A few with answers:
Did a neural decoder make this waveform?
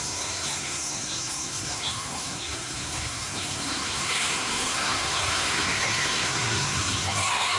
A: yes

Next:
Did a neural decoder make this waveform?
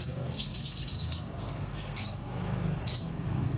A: yes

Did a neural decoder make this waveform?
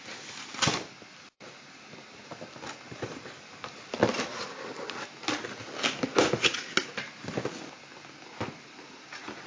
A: no